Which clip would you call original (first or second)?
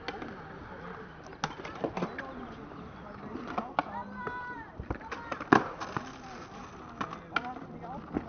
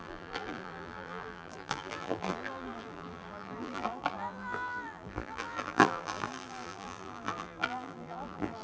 first